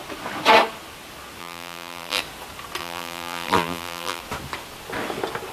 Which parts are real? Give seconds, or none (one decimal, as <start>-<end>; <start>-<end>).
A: 0.0-1.4; 2.2-2.8; 4.2-5.5